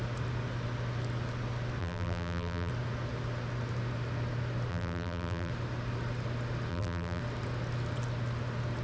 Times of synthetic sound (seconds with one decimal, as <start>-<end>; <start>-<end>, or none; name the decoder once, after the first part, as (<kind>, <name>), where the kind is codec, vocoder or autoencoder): 1.8-2.7 (vocoder, BigVGAN v2); 4.7-5.5; 6.7-7.2